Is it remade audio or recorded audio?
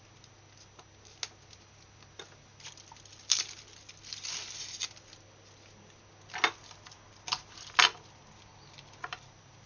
recorded